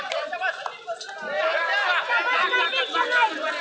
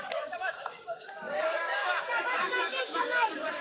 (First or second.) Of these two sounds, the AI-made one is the second